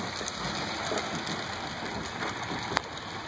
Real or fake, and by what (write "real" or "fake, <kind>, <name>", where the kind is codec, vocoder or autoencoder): real